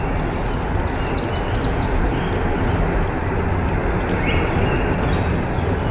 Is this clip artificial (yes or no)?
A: no